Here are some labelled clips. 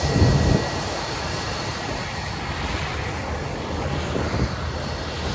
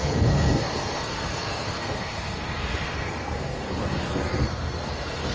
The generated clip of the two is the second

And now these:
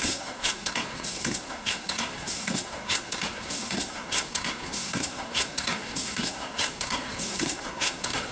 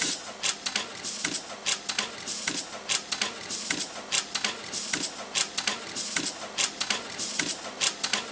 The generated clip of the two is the first